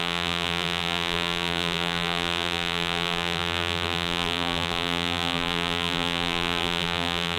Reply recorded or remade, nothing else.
remade